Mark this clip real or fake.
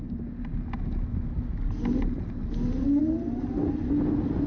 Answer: real